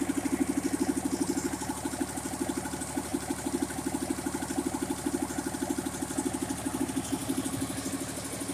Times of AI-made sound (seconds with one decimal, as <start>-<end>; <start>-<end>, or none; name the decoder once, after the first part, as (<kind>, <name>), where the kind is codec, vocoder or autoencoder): none